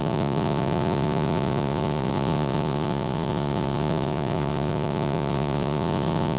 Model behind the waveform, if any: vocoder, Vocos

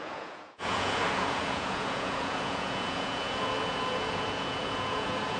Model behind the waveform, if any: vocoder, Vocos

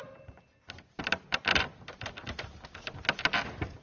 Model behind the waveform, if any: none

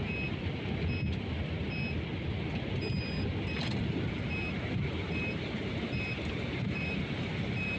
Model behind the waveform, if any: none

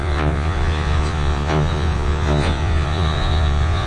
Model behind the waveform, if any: vocoder, Vocos